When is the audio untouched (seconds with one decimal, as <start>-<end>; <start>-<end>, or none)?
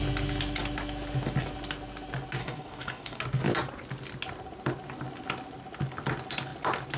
0.0-2.4; 3.2-7.0